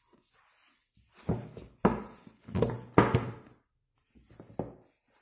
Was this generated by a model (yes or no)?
no